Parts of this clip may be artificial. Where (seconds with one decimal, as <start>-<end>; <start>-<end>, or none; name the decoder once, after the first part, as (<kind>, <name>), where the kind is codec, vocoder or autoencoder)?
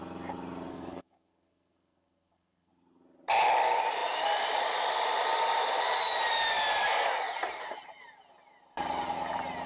0.7-2.7 (codec, SNAC)